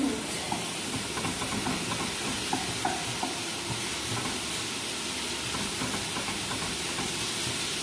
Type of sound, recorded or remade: recorded